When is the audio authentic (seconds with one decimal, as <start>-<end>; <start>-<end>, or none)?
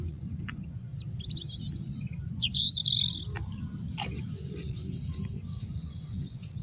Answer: 0.9-2.3; 2.8-4.2